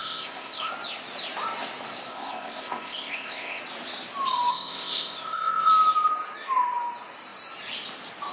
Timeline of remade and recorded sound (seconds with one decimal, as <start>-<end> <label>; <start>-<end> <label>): 0.0-0.7 remade; 0.7-2.1 recorded; 2.1-3.6 remade; 3.6-4.5 recorded; 4.5-5.7 remade; 5.7-8.3 recorded